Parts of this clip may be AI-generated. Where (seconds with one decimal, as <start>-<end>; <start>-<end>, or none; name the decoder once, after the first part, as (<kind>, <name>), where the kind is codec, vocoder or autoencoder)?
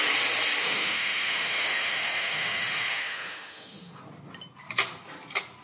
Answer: 0.6-4.0 (autoencoder, DAC-VAE)